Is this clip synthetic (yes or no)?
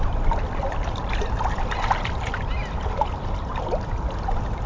no